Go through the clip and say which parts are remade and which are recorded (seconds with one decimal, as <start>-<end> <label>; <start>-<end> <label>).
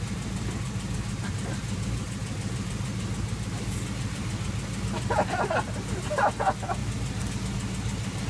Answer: 0.0-8.3 recorded